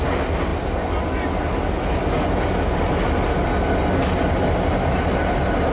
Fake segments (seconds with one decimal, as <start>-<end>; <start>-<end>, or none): none

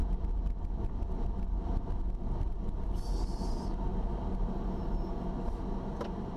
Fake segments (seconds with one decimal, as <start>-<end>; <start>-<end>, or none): none

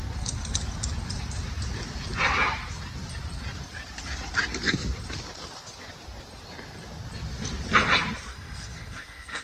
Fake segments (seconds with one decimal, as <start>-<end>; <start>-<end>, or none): 8.3-9.4